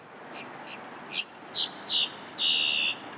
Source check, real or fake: real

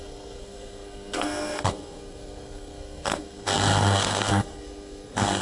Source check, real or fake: fake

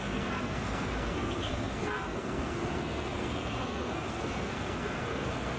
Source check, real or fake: fake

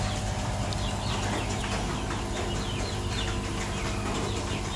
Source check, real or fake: real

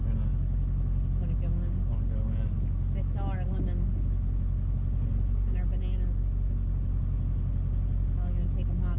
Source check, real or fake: real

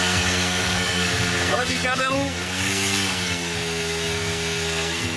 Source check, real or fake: fake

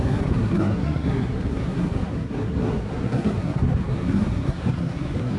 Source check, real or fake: fake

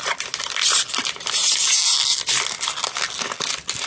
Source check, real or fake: real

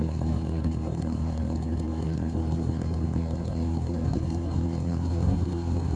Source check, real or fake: fake